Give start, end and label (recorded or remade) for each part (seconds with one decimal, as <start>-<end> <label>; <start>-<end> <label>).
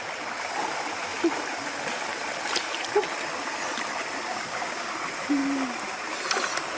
0.0-4.3 recorded; 4.3-4.9 remade; 4.9-6.8 recorded